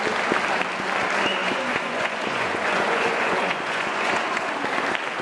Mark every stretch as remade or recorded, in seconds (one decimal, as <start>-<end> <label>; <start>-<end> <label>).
0.0-1.4 recorded; 1.4-4.5 remade; 4.5-5.2 recorded